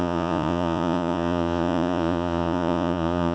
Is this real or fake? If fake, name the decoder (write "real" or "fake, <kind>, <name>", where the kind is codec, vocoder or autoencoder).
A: fake, vocoder, Vocos